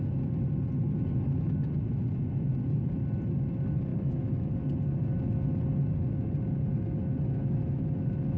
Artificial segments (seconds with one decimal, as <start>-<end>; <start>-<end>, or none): 3.9-4.5